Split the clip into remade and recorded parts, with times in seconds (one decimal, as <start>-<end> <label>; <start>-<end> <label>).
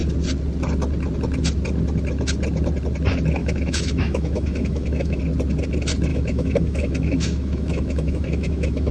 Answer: 0.0-3.4 recorded; 3.4-5.2 remade; 5.2-6.1 recorded; 6.1-8.9 remade